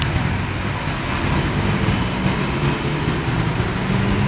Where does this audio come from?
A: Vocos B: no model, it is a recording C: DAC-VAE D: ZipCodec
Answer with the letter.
B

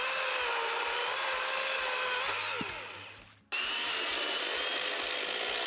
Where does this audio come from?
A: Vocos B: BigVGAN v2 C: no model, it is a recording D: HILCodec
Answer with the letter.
C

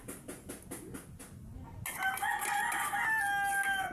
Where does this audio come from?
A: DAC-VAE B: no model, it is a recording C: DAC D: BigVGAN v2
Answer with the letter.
B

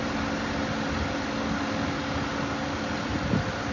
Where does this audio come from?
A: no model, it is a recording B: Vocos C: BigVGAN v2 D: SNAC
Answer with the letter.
A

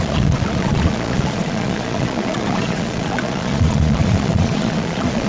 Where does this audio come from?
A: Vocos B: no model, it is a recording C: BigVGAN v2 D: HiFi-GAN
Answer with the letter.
A